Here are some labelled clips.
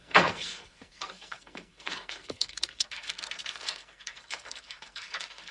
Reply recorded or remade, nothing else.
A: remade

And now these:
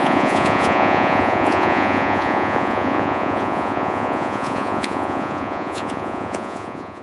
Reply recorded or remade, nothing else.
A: remade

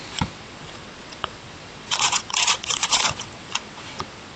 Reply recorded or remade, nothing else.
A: remade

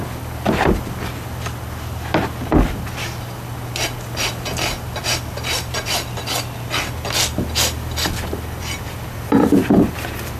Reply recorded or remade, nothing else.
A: recorded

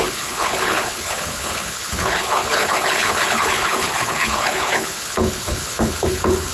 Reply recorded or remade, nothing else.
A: remade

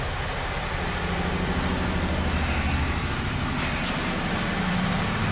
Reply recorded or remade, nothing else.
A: recorded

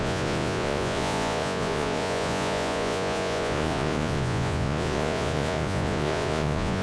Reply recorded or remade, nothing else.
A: remade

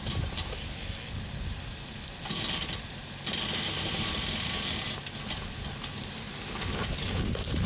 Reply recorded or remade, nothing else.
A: recorded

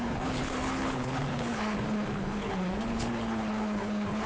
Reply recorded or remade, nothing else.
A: remade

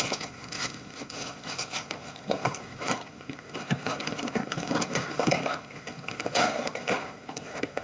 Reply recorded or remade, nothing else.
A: remade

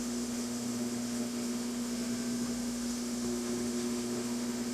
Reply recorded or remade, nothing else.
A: remade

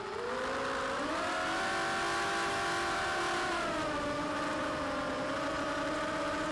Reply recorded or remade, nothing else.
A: recorded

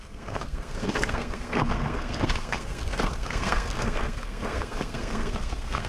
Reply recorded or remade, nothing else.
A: remade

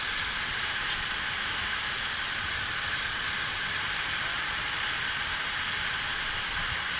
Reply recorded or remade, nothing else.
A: remade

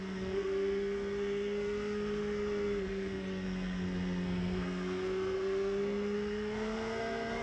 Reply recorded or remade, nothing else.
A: remade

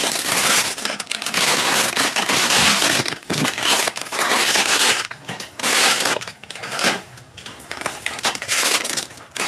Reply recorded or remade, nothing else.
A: remade